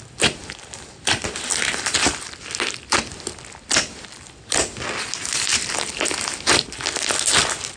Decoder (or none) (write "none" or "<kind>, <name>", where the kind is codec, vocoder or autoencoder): none